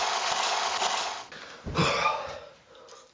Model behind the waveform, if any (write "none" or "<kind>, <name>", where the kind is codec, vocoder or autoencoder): none